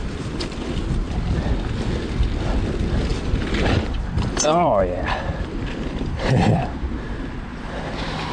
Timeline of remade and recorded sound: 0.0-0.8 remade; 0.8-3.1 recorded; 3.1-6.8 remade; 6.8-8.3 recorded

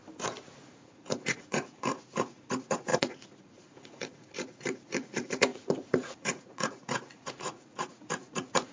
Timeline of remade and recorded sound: 0.0-0.7 recorded; 0.7-8.7 remade

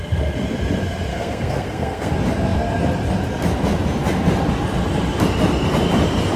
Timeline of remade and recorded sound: 0.0-1.1 recorded; 1.1-2.1 remade; 2.1-6.4 recorded

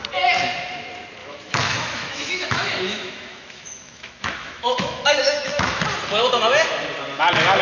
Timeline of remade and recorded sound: 0.0-1.2 recorded; 1.2-5.8 remade; 5.8-7.6 recorded

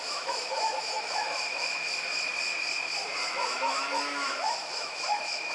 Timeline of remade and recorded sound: 0.0-2.3 remade; 2.3-3.3 recorded; 3.3-5.5 remade

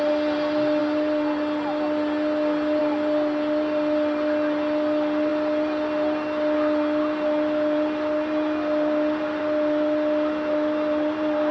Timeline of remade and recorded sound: 0.0-11.5 recorded

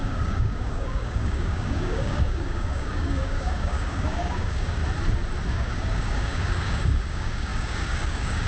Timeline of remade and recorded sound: 0.0-4.8 remade; 4.8-5.5 recorded; 5.5-8.5 remade

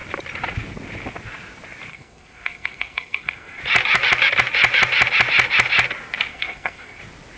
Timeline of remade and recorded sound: 0.0-1.9 recorded; 1.9-3.6 remade; 3.6-6.3 recorded; 6.3-7.0 remade; 7.0-7.4 recorded